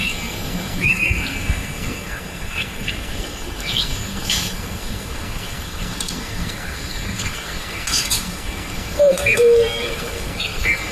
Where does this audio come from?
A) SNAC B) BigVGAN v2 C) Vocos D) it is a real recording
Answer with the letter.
A